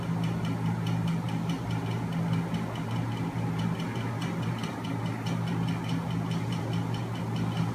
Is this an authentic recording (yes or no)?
yes